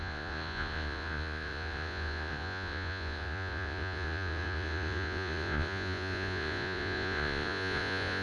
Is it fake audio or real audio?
fake